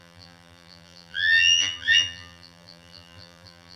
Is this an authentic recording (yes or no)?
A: no